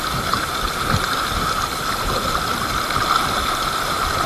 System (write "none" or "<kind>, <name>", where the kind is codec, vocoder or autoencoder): none